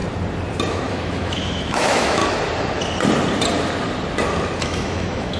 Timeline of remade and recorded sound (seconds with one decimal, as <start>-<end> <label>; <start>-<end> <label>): 0.0-0.7 recorded; 0.7-2.2 remade; 2.2-4.6 recorded; 4.6-5.4 remade